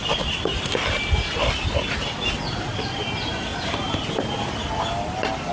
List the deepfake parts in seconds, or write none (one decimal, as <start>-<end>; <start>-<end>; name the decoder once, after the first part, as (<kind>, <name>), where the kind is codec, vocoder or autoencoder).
none